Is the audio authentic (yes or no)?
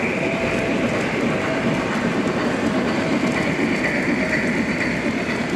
yes